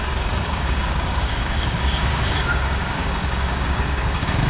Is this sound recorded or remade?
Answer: remade